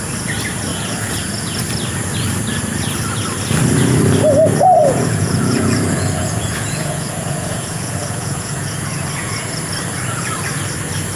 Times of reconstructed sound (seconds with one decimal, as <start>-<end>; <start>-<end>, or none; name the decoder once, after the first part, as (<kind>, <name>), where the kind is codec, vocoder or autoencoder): 0.7-1.6 (vocoder, Vocos); 4.8-9.6